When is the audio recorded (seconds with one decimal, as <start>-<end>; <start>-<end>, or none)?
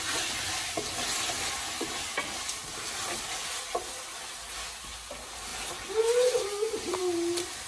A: 0.0-5.5; 7.0-7.7